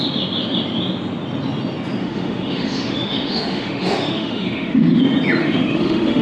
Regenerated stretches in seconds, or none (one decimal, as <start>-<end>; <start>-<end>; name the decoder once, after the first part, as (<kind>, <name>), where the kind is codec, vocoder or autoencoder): 2.0-5.0 (autoencoder, DAC-VAE); 5.4-6.2